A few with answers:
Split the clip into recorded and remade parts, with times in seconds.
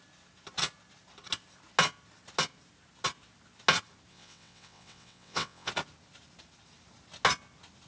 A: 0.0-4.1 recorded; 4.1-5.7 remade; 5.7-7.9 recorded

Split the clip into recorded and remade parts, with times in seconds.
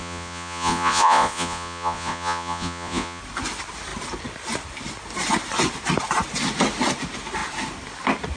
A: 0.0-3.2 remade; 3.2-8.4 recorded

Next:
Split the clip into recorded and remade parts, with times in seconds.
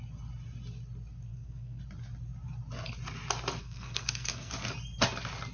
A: 0.0-1.3 recorded; 1.3-1.8 remade; 1.8-3.6 recorded; 3.6-4.5 remade; 4.5-5.5 recorded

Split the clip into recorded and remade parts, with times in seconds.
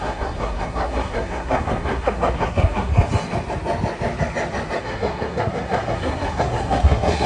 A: 0.0-2.9 remade; 2.9-4.8 recorded; 4.8-7.3 remade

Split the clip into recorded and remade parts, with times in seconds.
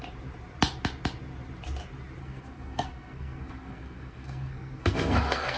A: 0.0-2.2 recorded; 2.2-5.6 remade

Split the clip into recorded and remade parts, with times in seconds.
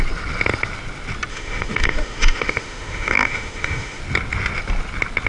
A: 0.0-1.3 recorded; 1.3-4.0 remade; 4.0-5.3 recorded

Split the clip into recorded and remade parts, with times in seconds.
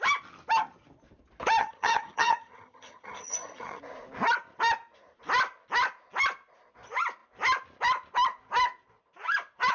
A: 0.0-1.6 recorded; 1.6-3.8 remade; 3.8-9.7 recorded